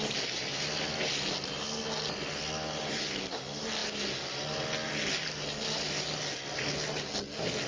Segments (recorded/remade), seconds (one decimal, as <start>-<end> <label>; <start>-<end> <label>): 0.0-7.7 recorded